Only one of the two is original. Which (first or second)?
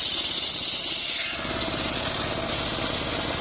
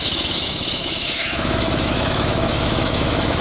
first